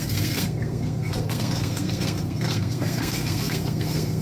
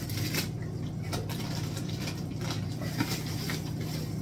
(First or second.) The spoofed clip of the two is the first